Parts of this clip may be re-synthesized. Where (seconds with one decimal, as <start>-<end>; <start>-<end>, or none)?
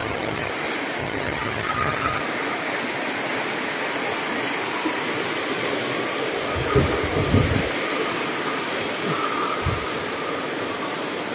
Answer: 0.0-0.5; 1.0-2.2